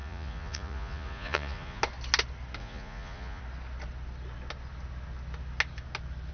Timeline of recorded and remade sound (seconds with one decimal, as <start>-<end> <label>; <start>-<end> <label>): 0.0-1.8 remade; 1.8-2.6 recorded; 2.6-3.4 remade; 3.4-6.3 recorded